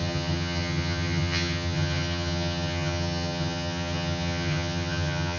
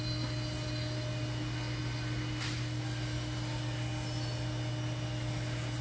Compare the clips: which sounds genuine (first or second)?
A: second